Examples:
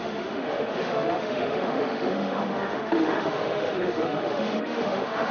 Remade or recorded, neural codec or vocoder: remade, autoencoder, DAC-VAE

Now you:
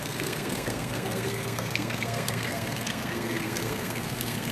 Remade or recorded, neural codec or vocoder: remade, codec, SNAC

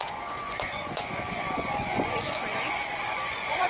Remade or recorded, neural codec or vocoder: remade, vocoder, Vocos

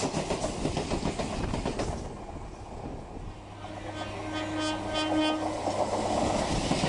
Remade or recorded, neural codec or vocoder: recorded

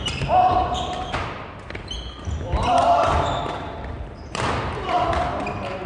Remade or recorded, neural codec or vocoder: recorded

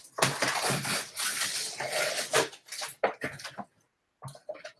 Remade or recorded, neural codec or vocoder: recorded